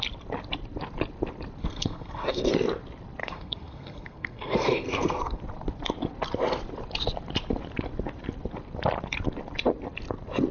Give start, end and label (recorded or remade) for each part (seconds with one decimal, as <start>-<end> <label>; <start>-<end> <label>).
0.0-1.6 recorded; 1.6-2.5 remade; 2.5-3.2 recorded; 3.2-5.4 remade; 5.4-10.5 recorded